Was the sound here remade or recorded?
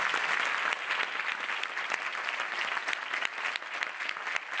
recorded